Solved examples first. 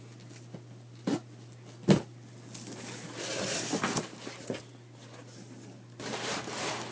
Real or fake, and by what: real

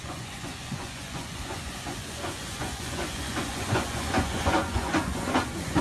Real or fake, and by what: fake, vocoder, Vocos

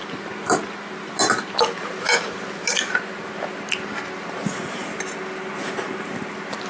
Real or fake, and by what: real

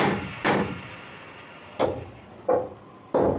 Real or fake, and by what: real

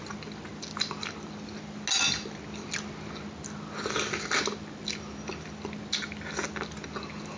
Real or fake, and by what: real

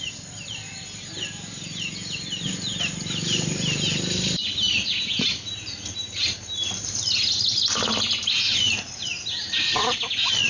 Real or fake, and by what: real